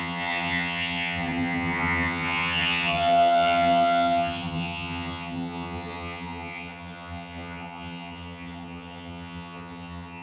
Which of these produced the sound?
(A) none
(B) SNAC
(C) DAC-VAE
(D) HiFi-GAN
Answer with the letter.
D